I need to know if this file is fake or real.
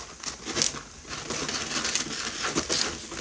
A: real